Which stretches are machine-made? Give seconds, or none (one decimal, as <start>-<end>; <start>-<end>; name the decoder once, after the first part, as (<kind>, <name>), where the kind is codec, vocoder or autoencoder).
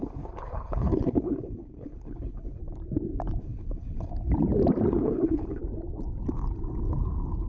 0.0-2.6 (codec, HILCodec); 3.4-4.1; 4.9-5.6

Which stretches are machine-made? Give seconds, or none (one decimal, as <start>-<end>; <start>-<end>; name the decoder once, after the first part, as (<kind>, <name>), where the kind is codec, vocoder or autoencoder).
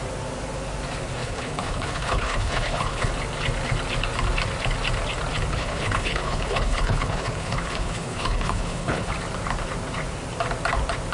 1.2-3.1 (codec, HILCodec); 5.5-9.1